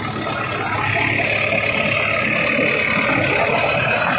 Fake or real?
real